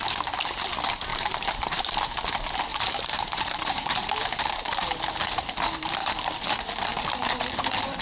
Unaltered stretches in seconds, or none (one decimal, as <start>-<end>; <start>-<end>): 0.0-1.1; 1.8-2.7; 4.3-6.0; 6.8-8.0